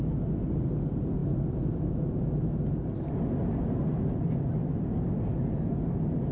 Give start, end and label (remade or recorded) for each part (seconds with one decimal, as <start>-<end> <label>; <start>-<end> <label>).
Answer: 0.0-1.2 recorded; 1.2-2.1 remade; 2.1-6.3 recorded